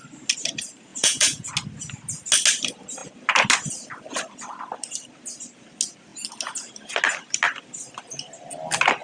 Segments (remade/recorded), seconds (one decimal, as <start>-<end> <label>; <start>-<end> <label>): 0.0-0.9 recorded; 0.9-1.5 remade; 1.5-9.0 recorded